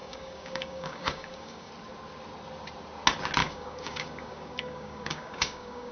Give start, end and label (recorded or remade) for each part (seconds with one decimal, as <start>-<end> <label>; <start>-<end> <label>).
0.0-1.7 remade; 1.7-3.4 recorded; 3.4-5.9 remade